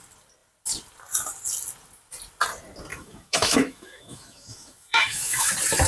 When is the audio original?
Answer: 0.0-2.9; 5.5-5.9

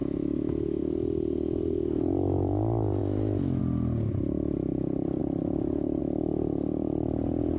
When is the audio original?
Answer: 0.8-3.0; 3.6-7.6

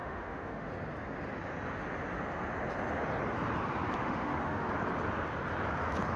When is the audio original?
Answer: 0.7-4.0; 4.7-6.2

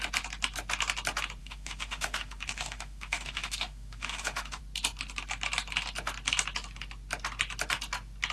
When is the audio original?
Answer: 0.0-1.4; 4.6-8.3

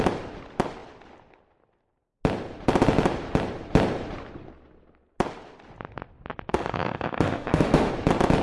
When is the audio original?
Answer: 0.0-6.5; 7.9-8.4